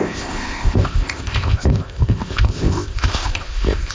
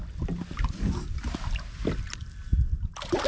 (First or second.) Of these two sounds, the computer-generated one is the first